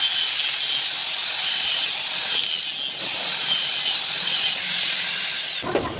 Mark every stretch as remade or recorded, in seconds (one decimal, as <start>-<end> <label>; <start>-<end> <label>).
0.0-6.0 recorded